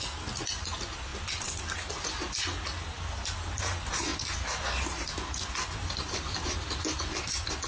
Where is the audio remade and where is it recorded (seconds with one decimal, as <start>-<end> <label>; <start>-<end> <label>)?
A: 0.0-7.7 recorded